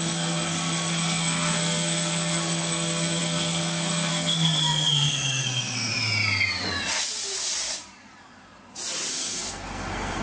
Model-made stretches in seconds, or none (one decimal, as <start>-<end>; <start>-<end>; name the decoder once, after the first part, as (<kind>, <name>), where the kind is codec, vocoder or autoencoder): 0.0-5.9 (codec, SNAC); 9.1-10.2